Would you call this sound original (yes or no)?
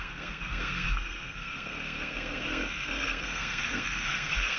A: no